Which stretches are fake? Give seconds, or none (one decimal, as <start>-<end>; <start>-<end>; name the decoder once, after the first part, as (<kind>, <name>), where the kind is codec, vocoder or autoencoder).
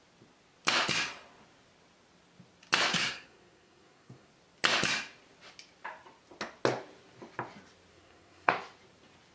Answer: 2.9-4.3 (codec, SNAC); 7.9-8.5